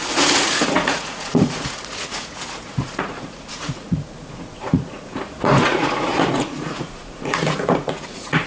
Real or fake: fake